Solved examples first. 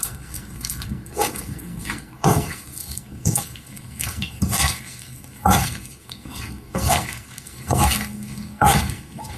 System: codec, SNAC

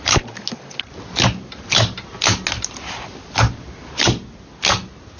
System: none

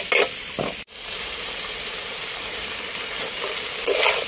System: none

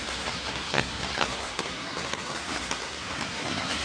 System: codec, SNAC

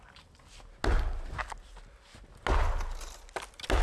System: none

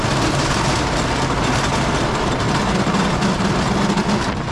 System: none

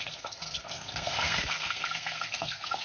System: codec, SNAC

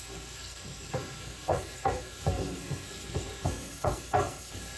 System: codec, SNAC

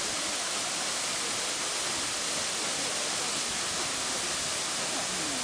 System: none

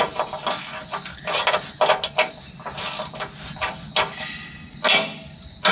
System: none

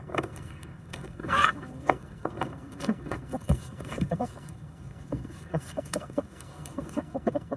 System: codec, SNAC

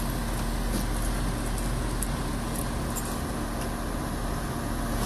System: none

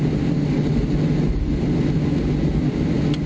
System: none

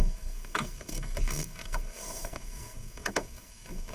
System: codec, SNAC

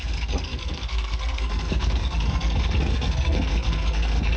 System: codec, SNAC